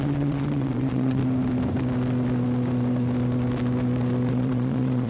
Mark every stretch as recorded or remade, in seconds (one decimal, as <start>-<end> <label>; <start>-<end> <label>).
0.0-1.2 remade; 1.2-4.3 recorded; 4.3-5.1 remade